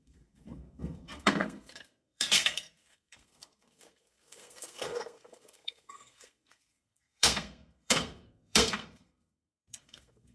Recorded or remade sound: remade